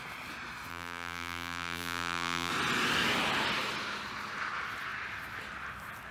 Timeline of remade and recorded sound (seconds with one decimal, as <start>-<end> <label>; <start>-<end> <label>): 0.0-0.7 recorded; 0.7-2.5 remade; 2.5-6.1 recorded